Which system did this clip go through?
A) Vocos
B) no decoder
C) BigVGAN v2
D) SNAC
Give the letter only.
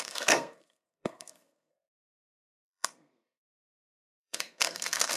D